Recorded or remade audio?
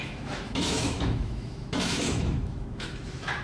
remade